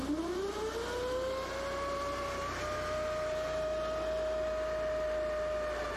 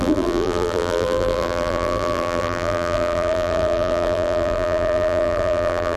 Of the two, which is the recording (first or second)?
first